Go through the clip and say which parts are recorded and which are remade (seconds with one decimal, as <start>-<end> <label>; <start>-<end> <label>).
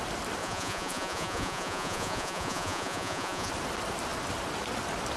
0.0-0.4 recorded; 0.4-3.5 remade; 3.5-5.2 recorded